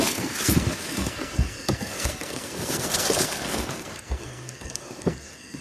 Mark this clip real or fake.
fake